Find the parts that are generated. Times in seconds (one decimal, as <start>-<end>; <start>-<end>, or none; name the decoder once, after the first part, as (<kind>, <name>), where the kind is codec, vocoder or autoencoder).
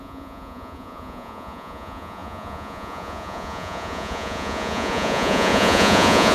0.0-6.3 (vocoder, Vocos)